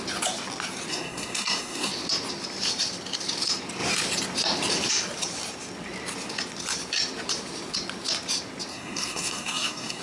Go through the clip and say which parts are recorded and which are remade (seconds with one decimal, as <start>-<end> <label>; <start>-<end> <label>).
0.0-0.9 recorded; 0.9-1.9 remade; 1.9-8.7 recorded; 8.7-10.0 remade